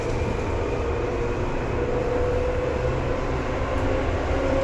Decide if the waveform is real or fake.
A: real